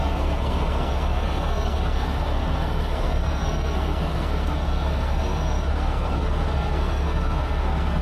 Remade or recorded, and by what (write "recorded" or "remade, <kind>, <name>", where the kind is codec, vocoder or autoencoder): remade, codec, SNAC